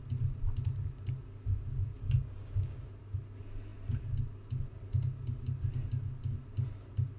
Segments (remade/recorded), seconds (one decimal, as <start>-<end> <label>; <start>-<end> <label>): 0.0-2.0 recorded; 2.0-2.8 remade; 2.8-7.2 recorded